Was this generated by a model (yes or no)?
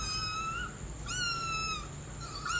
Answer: no